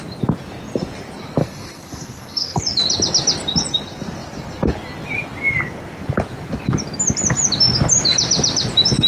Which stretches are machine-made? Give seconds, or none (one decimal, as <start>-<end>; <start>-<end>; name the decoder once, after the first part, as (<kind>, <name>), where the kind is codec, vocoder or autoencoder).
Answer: 1.4-2.6 (codec, SNAC)